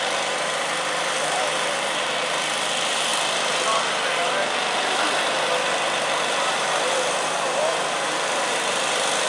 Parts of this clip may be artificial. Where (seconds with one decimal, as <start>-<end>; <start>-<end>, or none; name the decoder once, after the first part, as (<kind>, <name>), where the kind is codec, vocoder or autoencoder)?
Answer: 0.0-3.1 (vocoder, BigVGAN v2); 6.2-9.3